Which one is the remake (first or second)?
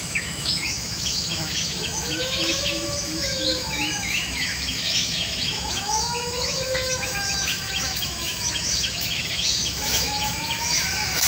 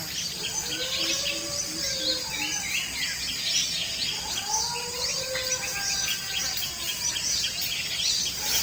first